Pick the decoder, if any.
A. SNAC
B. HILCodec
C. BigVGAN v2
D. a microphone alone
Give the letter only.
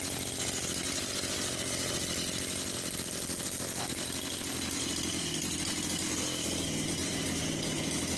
D